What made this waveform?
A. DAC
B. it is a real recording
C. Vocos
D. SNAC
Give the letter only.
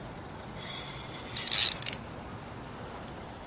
B